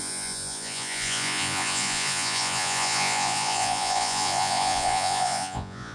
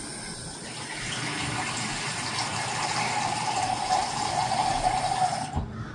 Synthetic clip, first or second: first